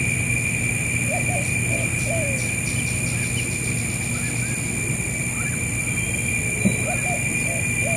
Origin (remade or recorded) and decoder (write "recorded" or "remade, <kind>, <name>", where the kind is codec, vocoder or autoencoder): recorded